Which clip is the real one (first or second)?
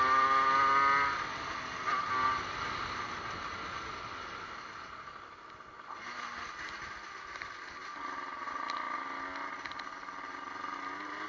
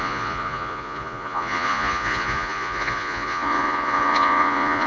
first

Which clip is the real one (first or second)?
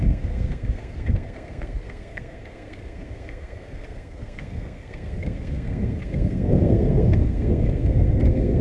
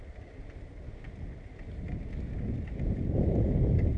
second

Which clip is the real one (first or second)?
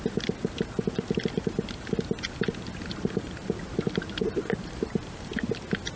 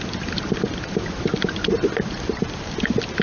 first